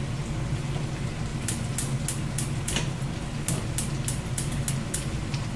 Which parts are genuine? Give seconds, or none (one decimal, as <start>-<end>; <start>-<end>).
0.0-5.6